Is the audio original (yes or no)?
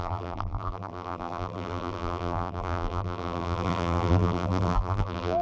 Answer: no